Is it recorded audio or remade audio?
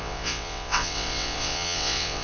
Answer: remade